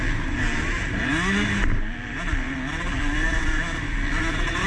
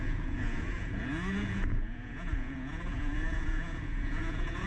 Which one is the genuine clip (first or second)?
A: first